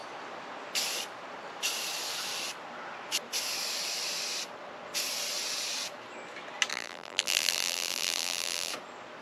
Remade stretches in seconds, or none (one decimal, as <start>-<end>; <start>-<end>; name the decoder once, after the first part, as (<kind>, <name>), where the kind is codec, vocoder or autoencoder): 6.7-8.7 (vocoder, BigVGAN v2)